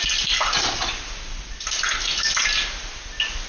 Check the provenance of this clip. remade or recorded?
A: recorded